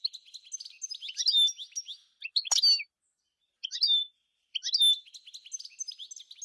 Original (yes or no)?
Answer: yes